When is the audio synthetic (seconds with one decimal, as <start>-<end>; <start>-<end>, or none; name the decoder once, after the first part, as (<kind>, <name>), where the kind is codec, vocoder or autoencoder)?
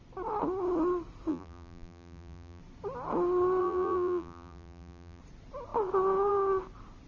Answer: 1.3-2.6 (vocoder, BigVGAN v2); 3.6-5.2